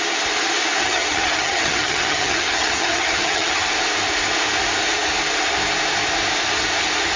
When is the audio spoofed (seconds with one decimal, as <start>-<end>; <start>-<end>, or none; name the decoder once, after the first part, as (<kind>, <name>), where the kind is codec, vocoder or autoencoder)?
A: 0.8-3.7 (vocoder, HiFi-GAN)